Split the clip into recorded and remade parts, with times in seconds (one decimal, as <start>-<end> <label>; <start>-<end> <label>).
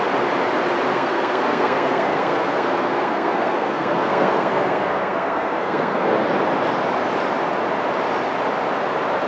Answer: 0.0-0.9 recorded; 0.9-6.1 remade; 6.1-9.3 recorded